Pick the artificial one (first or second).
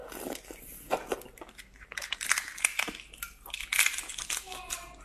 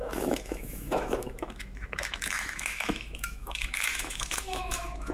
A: second